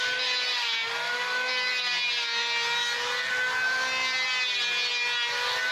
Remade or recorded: recorded